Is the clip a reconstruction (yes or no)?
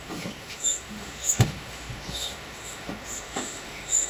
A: yes